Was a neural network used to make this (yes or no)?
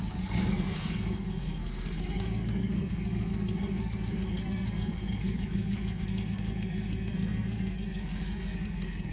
yes